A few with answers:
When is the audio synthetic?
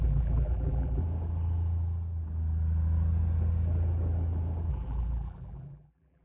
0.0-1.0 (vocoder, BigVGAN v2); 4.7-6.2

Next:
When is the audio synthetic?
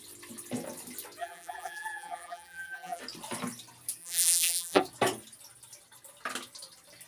1.2-3.0 (vocoder, BigVGAN v2); 4.0-4.8